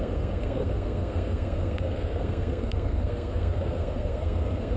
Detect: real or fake fake